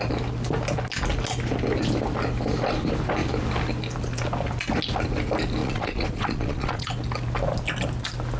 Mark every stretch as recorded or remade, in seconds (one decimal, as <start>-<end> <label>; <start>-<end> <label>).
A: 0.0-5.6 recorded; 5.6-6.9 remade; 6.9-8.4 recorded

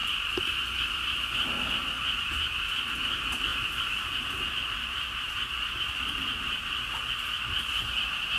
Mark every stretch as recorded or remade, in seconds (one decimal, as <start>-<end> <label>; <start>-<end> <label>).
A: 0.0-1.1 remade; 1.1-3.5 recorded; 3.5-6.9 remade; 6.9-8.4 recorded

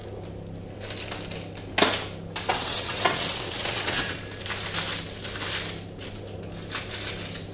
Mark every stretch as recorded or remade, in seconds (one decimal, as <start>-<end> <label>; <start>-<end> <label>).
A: 0.0-2.5 recorded; 2.5-4.2 remade; 4.2-7.5 recorded

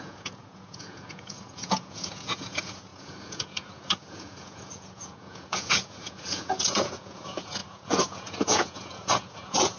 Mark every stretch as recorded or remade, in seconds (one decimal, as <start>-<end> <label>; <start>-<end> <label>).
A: 0.0-9.8 remade

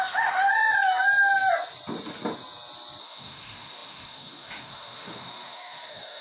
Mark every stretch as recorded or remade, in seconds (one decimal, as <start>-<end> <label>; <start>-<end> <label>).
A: 0.0-0.5 remade; 0.5-3.0 recorded; 3.0-6.2 remade